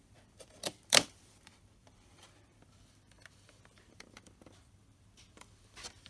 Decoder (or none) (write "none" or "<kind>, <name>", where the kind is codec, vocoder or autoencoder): vocoder, BigVGAN v2